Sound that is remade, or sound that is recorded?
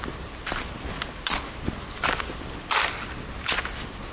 recorded